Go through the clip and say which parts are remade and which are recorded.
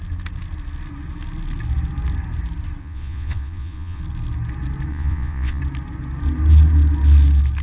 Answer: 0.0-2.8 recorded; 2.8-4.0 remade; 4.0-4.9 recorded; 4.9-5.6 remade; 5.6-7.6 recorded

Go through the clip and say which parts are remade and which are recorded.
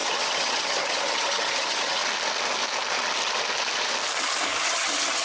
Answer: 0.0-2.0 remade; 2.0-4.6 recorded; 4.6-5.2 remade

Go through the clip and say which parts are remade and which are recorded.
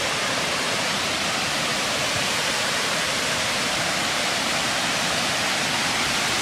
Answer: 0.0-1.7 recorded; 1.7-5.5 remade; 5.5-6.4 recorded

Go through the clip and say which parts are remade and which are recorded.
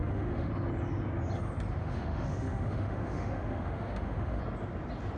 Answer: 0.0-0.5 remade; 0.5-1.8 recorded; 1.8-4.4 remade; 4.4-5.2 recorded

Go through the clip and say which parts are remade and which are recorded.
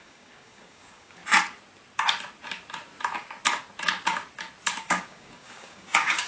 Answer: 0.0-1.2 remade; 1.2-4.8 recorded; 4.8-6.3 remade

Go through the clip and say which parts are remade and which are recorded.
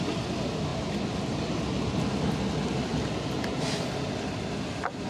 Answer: 0.0-5.1 recorded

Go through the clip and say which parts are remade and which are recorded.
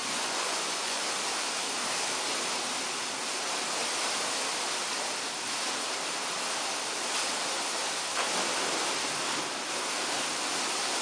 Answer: 0.0-1.0 remade; 1.0-11.0 recorded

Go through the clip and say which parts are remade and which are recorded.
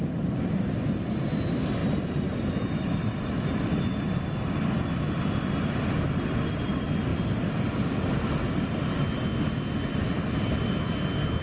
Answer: 0.0-11.4 recorded